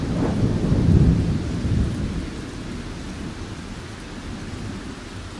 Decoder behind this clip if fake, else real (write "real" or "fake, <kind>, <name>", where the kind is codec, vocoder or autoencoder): real